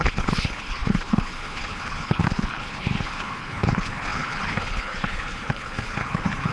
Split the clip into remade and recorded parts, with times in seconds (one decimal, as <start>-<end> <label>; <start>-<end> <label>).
0.0-6.5 remade